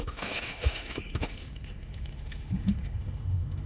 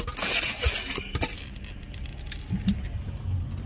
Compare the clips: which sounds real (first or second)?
second